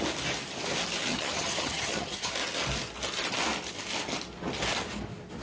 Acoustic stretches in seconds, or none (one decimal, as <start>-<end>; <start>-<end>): 0.0-1.1; 2.3-5.4